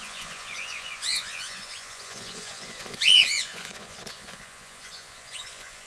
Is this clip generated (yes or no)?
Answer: yes